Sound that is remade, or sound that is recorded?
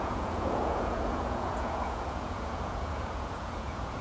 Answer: remade